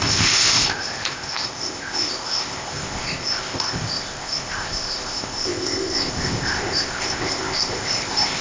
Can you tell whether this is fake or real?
fake